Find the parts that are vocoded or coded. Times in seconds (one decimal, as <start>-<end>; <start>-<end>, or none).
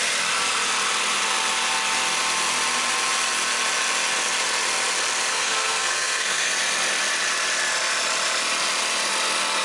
5.3-6.5